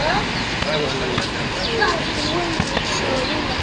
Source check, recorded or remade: recorded